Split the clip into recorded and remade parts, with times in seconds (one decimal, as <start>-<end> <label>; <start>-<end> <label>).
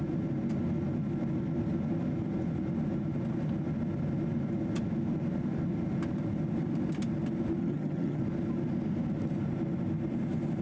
0.0-7.6 recorded; 7.6-8.2 remade; 8.2-10.6 recorded